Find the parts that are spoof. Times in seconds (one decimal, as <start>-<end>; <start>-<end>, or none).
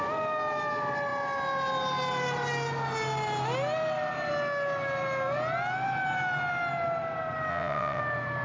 7.5-8.0